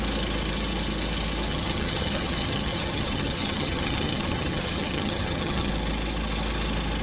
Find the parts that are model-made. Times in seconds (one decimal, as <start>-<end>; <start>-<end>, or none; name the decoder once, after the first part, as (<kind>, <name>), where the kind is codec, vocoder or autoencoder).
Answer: 1.5-5.7 (vocoder, HiFi-GAN)